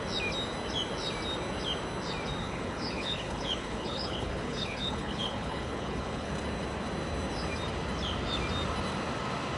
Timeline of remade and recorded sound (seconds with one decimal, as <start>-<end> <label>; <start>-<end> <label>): 0.0-2.4 recorded; 2.4-6.3 remade; 6.3-9.6 recorded